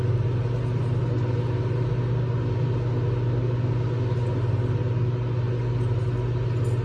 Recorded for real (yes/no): yes